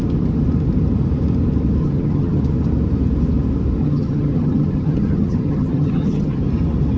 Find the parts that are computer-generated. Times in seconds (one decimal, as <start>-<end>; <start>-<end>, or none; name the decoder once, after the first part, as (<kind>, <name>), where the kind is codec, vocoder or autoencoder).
1.8-2.4 (vocoder, HiFi-GAN); 3.8-6.4